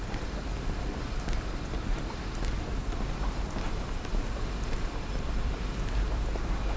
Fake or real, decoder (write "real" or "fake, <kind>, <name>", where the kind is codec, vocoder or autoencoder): fake, vocoder, BigVGAN v2